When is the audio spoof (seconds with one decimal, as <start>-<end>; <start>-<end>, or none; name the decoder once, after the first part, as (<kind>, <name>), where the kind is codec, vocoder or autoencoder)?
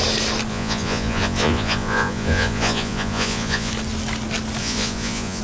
0.5-3.7 (vocoder, Vocos); 4.6-5.4